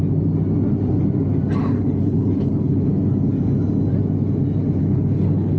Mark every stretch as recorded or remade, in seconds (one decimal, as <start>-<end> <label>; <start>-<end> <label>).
0.0-1.6 recorded; 1.6-2.9 remade; 2.9-4.8 recorded; 4.8-5.6 remade

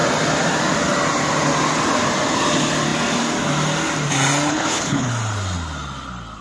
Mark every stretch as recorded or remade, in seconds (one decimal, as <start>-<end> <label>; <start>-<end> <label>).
0.0-4.5 recorded; 4.5-5.1 remade; 5.1-6.4 recorded

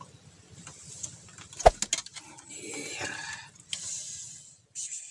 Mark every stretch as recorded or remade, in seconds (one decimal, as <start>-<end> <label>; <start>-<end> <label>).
0.0-5.1 recorded

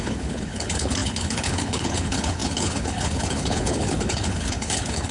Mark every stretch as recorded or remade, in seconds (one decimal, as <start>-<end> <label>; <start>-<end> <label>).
0.0-5.1 remade